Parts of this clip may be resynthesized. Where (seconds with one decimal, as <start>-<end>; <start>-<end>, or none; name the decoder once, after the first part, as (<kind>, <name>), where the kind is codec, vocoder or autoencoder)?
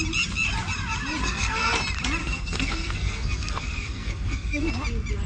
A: 1.2-1.7 (codec, SNAC); 2.2-4.7